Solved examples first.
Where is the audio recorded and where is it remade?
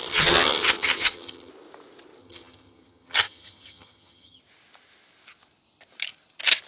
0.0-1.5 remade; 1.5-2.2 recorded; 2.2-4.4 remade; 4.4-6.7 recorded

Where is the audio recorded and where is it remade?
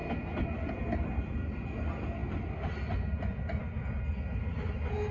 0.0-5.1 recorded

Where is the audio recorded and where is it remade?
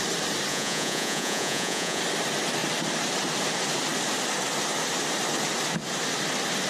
0.0-0.5 recorded; 0.5-2.0 remade; 2.0-6.7 recorded